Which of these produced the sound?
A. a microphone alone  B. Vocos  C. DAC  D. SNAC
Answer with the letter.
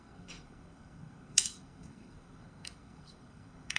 D